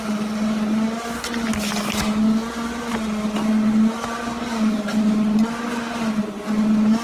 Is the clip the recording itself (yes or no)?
yes